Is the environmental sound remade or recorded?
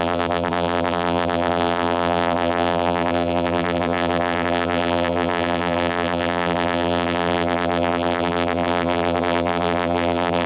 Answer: remade